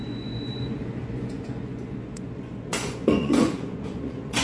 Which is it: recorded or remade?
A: remade